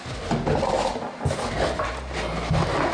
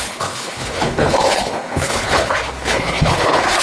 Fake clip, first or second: second